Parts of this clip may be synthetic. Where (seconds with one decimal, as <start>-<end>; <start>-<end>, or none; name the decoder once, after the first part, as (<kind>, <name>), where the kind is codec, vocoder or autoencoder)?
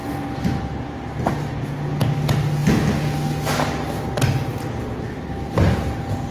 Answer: none